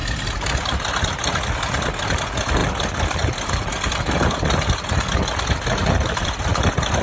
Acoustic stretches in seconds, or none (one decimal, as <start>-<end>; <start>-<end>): 0.0-7.0